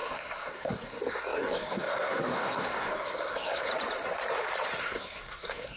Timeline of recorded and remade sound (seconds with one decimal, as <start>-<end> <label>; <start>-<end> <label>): 0.0-3.7 remade; 3.7-4.8 recorded; 4.8-5.8 remade